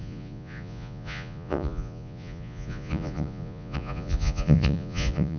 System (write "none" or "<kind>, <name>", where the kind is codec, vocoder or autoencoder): vocoder, Vocos